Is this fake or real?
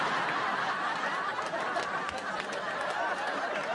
real